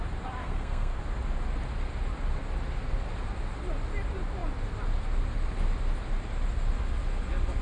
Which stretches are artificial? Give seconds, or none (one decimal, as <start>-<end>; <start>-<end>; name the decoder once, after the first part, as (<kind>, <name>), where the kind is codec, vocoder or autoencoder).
0.4-1.0 (codec, SNAC)